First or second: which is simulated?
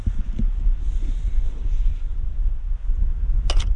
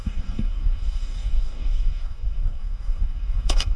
second